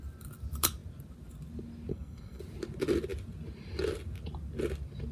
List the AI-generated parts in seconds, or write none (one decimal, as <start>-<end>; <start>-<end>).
1.9-2.4